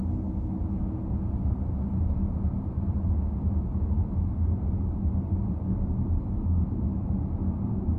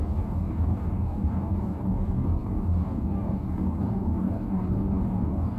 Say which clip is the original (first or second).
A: first